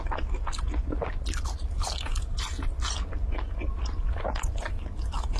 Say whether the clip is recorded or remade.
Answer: recorded